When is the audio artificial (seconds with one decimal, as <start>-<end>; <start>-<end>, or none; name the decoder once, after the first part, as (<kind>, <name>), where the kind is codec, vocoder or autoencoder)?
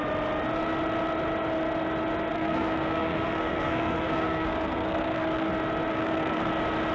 2.3-5.5 (codec, SNAC); 5.9-6.5